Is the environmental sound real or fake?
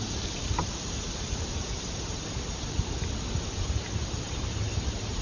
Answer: real